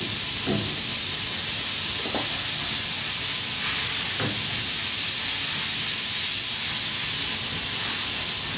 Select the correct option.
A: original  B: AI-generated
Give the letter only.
A